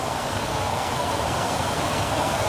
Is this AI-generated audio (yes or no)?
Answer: yes